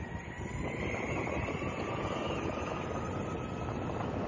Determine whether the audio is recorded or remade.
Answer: recorded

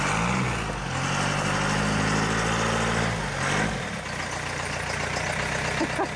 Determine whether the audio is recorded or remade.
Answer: recorded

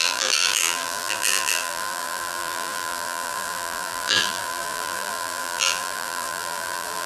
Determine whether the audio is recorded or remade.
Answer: remade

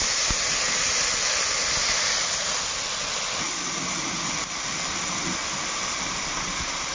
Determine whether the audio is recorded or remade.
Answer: recorded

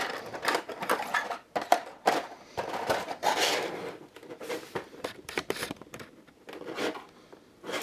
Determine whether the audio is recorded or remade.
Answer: remade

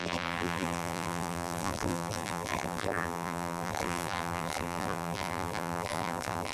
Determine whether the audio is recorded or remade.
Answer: remade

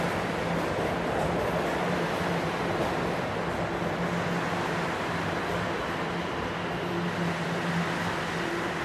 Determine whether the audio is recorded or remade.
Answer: recorded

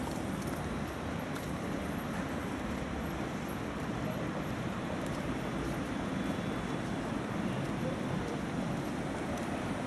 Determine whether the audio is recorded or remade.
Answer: remade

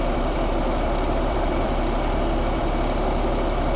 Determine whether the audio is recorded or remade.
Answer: remade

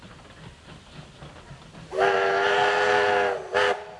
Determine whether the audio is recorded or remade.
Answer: recorded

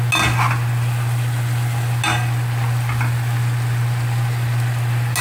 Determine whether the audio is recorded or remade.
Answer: recorded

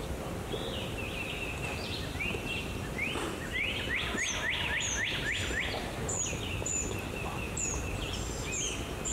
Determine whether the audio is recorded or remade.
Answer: recorded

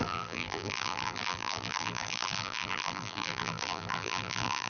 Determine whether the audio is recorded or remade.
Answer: remade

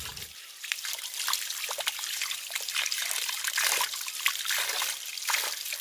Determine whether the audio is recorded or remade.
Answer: remade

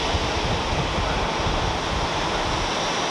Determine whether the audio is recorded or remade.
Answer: recorded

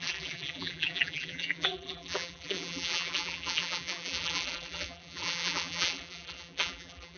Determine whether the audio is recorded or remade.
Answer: remade